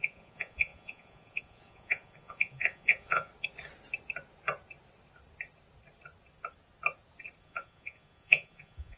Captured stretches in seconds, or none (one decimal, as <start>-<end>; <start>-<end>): 3.3-7.4